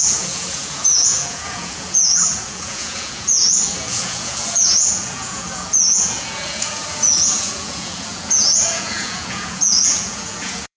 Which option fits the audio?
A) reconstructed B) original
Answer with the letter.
A